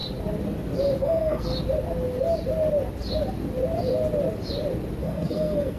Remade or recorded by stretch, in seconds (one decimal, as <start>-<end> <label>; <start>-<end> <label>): 0.0-1.0 recorded; 1.0-1.5 remade; 1.5-5.0 recorded; 5.0-5.8 remade